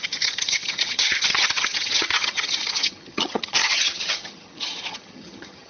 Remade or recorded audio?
remade